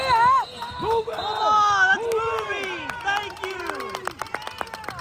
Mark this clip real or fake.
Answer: real